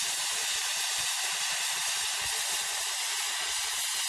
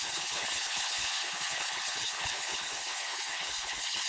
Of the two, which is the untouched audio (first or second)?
first